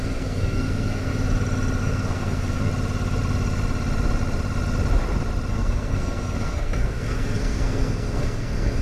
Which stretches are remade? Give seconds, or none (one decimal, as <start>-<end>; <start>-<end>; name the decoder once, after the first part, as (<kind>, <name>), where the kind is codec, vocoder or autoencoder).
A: 0.0-1.1 (codec, SNAC); 1.8-2.7; 5.5-8.8